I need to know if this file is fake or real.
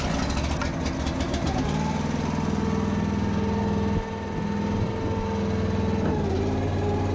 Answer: real